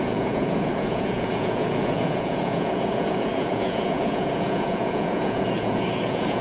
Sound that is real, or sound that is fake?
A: fake